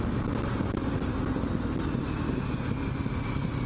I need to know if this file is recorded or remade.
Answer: recorded